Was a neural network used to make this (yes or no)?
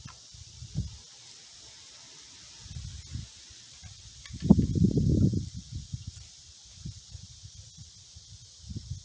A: no